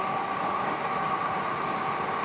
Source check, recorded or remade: recorded